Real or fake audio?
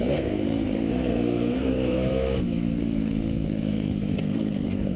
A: fake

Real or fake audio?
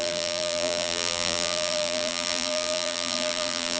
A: fake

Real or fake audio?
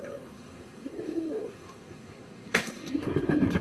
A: fake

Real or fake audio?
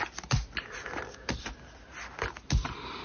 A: real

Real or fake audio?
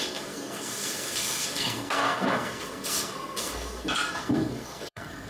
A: fake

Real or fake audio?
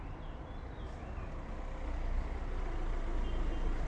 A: real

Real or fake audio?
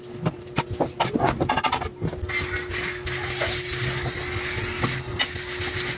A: real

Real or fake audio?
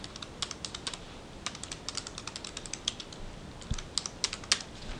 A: real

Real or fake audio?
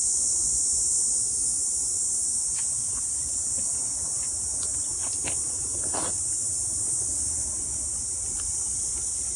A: real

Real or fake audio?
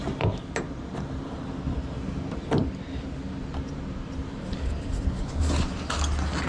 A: real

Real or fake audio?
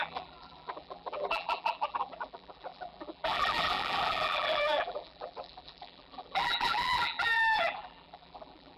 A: fake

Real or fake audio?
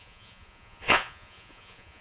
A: fake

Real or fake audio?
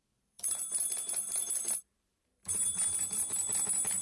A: fake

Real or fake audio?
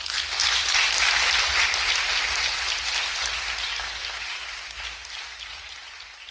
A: real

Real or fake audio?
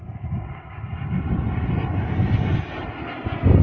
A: real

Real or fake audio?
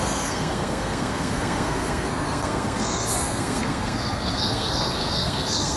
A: fake